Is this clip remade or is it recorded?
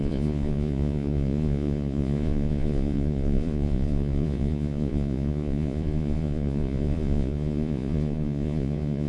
remade